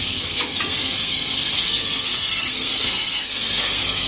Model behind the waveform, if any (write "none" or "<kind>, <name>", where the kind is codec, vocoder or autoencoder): codec, SNAC